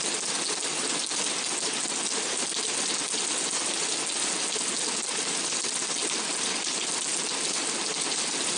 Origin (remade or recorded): recorded